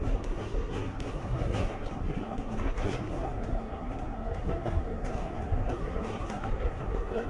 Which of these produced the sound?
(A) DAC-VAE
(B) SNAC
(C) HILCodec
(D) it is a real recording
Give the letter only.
B